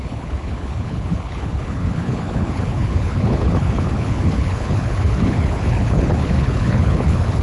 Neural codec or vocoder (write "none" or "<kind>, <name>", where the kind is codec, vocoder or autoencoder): codec, HILCodec